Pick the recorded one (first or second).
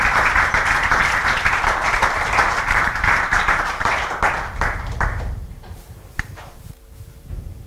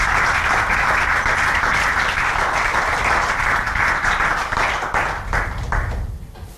second